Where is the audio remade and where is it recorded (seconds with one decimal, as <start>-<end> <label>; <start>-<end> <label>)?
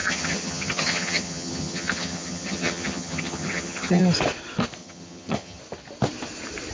0.0-4.0 remade; 4.0-4.8 recorded; 4.8-5.6 remade; 5.6-6.7 recorded